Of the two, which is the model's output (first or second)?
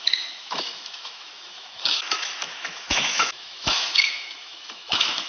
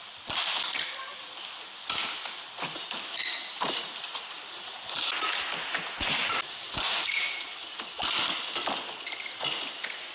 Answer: first